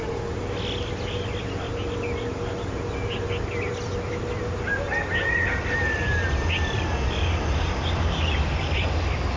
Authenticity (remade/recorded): recorded